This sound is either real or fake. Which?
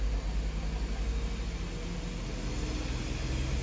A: real